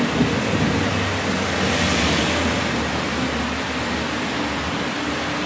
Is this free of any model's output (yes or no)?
yes